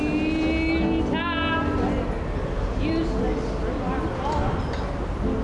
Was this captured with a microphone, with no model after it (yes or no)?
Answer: yes